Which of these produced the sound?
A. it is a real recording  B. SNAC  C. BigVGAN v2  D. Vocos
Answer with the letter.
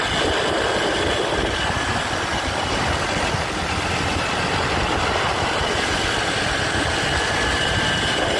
A